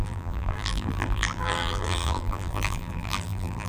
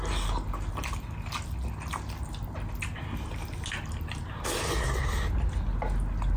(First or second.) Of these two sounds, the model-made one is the first